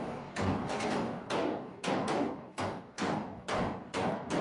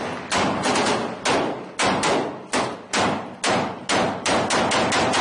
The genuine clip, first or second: second